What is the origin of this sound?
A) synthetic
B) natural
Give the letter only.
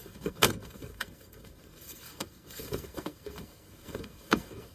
A